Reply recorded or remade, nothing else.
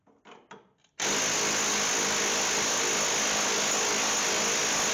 recorded